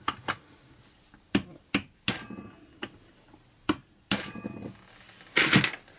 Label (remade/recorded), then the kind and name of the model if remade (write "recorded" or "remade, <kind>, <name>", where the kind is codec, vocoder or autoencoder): recorded